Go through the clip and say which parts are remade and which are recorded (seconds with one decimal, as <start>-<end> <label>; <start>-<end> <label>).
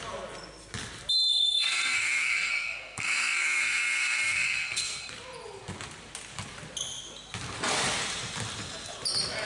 0.0-1.3 recorded; 1.3-5.1 remade; 5.1-9.4 recorded